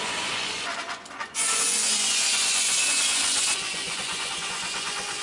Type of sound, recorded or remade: remade